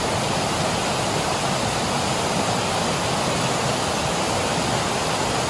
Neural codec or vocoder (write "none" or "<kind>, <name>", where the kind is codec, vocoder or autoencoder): none